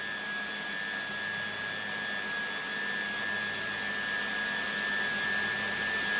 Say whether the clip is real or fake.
real